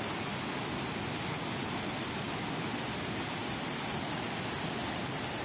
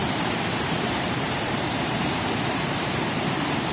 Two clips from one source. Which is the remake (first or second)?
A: second